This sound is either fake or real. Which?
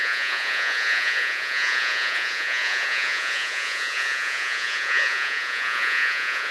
fake